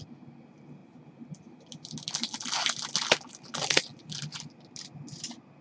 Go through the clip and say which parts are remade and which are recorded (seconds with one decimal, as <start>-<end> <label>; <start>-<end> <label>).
0.0-5.6 recorded